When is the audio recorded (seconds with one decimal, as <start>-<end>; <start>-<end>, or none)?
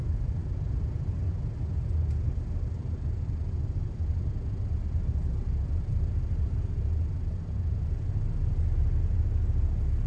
0.0-10.1